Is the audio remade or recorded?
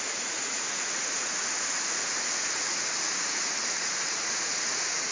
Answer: remade